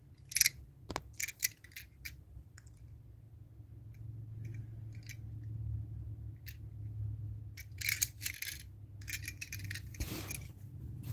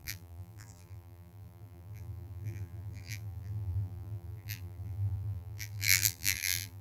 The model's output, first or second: second